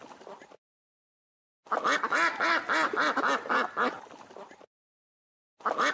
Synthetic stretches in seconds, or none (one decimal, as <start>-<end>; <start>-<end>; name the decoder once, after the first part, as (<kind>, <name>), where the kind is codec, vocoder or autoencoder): none